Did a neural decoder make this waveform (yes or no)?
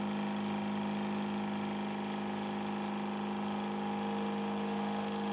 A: no